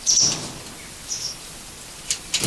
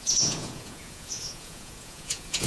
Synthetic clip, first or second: second